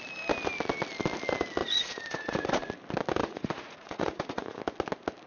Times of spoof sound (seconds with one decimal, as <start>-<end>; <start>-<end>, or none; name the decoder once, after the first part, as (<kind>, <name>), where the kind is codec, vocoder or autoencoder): 1.6-2.7 (vocoder, Vocos); 3.2-4.6